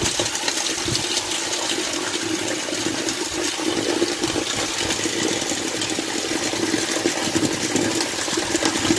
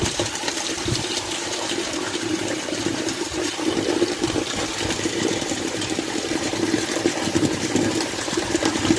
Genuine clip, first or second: first